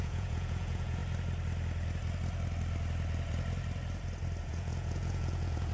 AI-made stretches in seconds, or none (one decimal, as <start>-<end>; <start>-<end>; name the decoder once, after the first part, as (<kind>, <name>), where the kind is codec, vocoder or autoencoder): 0.0-1.0 (vocoder, Vocos); 4.4-5.7

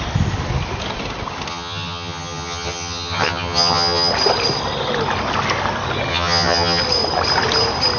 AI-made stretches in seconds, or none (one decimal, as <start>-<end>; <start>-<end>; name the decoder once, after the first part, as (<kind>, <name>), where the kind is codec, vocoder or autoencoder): 1.5-4.1 (vocoder, HiFi-GAN); 6.1-6.8

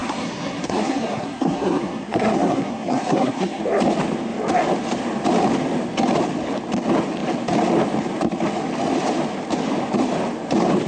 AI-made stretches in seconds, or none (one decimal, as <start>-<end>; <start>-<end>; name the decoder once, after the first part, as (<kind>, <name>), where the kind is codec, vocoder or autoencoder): 0.0-3.6 (codec, SNAC)